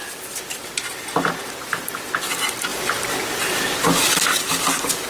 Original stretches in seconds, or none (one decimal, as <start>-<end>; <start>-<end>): 0.0-5.1